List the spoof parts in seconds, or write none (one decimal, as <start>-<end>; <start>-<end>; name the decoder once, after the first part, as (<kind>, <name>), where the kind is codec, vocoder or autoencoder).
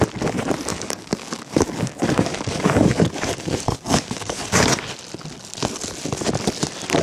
0.7-4.9 (codec, DAC)